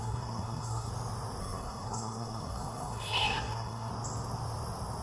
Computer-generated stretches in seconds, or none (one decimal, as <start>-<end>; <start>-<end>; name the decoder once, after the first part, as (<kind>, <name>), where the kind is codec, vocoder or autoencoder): 0.0-0.9 (codec, SNAC); 1.4-3.9